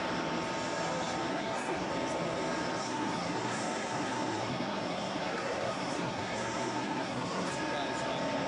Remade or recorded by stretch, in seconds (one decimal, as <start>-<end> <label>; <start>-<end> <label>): 0.0-1.3 recorded; 1.3-1.9 remade; 1.9-2.8 recorded; 2.8-7.5 remade; 7.5-8.5 recorded